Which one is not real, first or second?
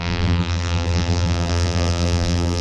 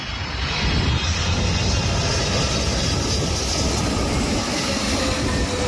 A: first